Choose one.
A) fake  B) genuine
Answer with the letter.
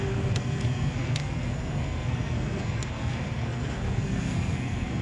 A